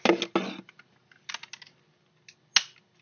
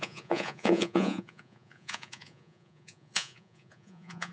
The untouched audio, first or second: first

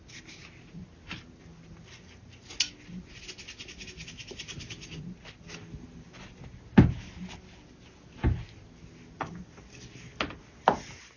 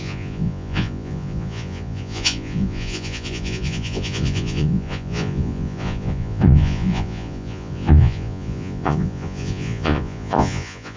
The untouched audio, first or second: first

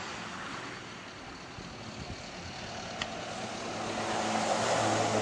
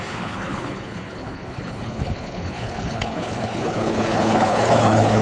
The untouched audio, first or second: first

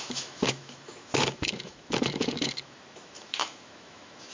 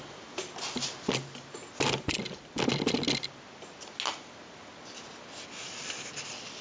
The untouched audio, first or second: second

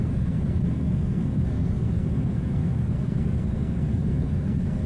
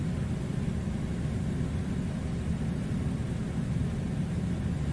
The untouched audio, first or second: second